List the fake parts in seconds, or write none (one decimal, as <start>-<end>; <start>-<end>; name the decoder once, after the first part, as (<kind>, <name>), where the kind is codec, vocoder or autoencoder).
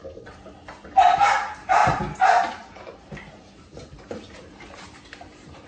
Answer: 0.0-5.7 (vocoder, BigVGAN v2)